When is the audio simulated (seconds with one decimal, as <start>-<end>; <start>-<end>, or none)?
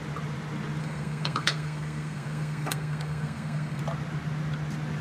0.8-3.8